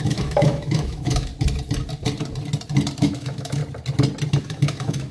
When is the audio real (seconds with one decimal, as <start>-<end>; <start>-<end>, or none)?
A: 1.3-3.0; 3.6-4.4